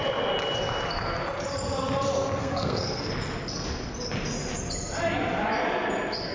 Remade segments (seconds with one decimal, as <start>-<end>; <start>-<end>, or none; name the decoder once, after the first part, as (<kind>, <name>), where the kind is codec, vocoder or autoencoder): 2.4-3.1 (codec, SNAC)